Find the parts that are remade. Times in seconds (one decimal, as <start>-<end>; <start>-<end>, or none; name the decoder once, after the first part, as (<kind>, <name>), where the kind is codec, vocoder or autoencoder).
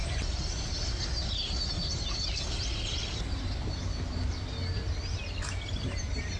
none